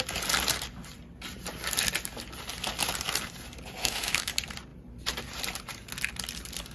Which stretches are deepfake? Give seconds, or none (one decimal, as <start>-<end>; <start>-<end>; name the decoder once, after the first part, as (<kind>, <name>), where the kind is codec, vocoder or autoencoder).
3.8-4.3 (autoencoder, DAC-VAE)